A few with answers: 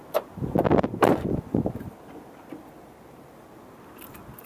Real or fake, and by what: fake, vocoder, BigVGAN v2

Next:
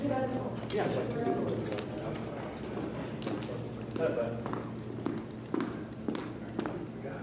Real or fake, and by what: real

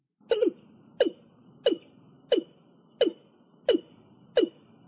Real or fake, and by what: real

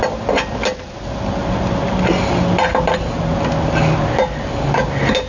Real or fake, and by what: real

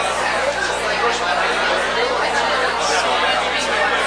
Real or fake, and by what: real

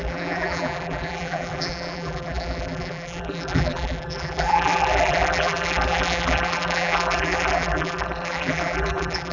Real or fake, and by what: fake, vocoder, BigVGAN v2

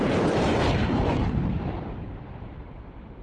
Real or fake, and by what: fake, vocoder, BigVGAN v2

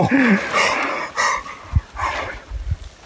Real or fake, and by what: fake, vocoder, BigVGAN v2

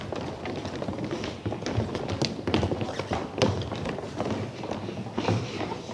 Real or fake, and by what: real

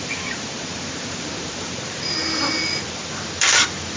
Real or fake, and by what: fake, vocoder, BigVGAN v2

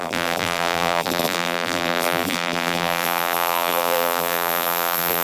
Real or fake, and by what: fake, vocoder, BigVGAN v2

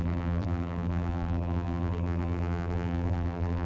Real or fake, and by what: fake, vocoder, BigVGAN v2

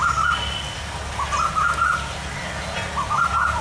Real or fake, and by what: real